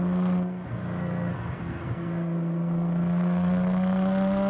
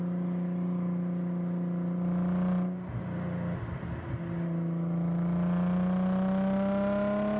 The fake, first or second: first